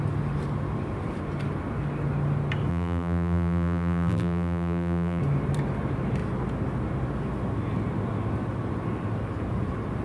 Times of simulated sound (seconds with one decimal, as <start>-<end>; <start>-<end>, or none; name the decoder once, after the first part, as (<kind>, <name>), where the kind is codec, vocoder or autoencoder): 2.7-5.2 (vocoder, BigVGAN v2)